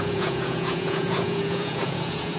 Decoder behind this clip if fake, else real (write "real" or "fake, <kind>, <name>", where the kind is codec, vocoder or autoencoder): fake, vocoder, Vocos